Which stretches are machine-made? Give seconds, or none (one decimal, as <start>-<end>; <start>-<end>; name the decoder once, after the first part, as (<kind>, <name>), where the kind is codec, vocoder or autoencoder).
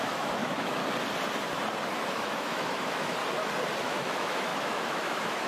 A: 0.0-0.8 (autoencoder, DAC-VAE); 2.1-3.2; 3.8-5.5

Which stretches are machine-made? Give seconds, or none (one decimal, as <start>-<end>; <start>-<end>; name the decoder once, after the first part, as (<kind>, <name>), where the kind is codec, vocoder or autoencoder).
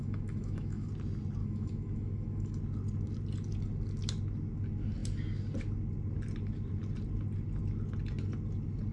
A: 0.0-0.9 (autoencoder, DAC-VAE); 1.4-2.6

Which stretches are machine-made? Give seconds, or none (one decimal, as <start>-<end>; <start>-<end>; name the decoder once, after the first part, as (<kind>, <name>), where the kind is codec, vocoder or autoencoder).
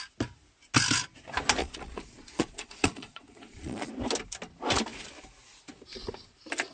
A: 1.6-3.9 (vocoder, Vocos)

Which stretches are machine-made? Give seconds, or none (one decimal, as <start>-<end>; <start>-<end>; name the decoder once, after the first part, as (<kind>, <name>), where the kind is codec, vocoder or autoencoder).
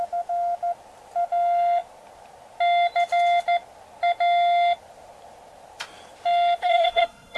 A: 6.6-7.4 (codec, SNAC)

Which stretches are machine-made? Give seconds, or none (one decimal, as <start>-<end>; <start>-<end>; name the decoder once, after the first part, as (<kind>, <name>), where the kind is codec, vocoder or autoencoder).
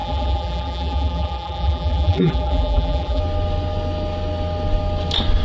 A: 0.0-3.2 (vocoder, BigVGAN v2)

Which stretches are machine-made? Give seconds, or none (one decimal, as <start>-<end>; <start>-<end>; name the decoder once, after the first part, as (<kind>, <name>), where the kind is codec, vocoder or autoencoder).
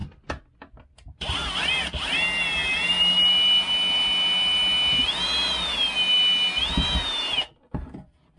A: none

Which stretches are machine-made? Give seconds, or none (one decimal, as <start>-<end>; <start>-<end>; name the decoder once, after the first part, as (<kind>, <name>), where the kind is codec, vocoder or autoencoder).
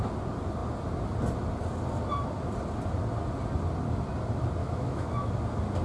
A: 4.6-5.3 (autoencoder, DAC-VAE)